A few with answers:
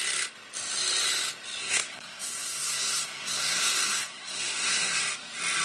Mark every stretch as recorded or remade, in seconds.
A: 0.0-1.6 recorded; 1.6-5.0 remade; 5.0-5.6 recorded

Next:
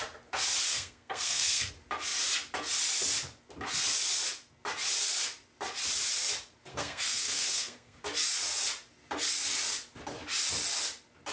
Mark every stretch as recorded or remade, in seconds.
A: 0.0-0.7 recorded; 0.7-1.7 remade; 1.7-6.7 recorded; 6.7-8.0 remade; 8.0-11.3 recorded

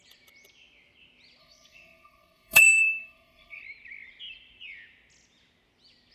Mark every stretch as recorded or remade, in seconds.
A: 0.0-1.4 recorded; 1.4-3.6 remade; 3.6-6.1 recorded

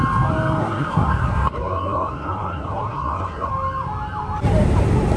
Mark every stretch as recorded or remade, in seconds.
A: 0.0-0.6 recorded; 0.6-3.5 remade; 3.5-5.2 recorded

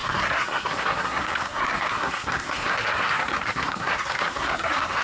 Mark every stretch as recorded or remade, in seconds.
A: 0.0-5.0 remade

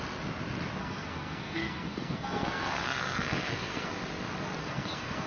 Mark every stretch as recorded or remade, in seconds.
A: 0.0-0.8 recorded; 0.8-3.9 remade; 3.9-4.6 recorded; 4.6-5.3 remade

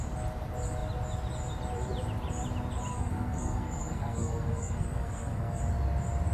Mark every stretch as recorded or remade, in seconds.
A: 0.0-2.9 recorded; 2.9-5.6 remade; 5.6-6.3 recorded

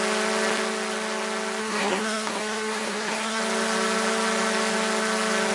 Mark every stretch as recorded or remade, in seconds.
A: 0.0-1.6 recorded; 1.6-3.4 remade; 3.4-5.5 recorded